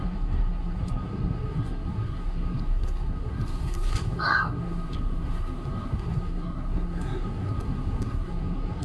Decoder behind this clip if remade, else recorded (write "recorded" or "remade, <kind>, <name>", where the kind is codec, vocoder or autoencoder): remade, codec, SNAC